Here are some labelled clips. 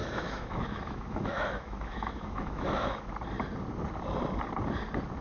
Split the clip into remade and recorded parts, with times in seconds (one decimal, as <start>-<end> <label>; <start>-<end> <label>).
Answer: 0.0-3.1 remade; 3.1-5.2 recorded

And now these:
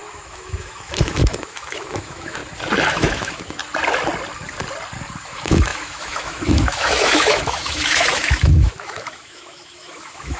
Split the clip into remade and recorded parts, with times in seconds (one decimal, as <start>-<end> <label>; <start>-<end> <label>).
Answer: 0.0-2.4 remade; 2.4-2.9 recorded; 2.9-3.6 remade; 3.6-5.2 recorded; 5.2-10.4 remade

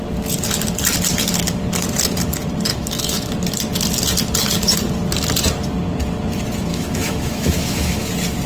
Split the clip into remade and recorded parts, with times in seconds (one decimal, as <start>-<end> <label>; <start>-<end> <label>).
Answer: 0.0-2.7 recorded; 2.7-3.3 remade; 3.3-6.7 recorded; 6.7-8.1 remade; 8.1-8.5 recorded